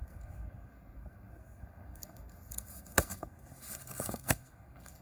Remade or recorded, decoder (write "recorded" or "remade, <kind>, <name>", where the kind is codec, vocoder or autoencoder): remade, codec, SNAC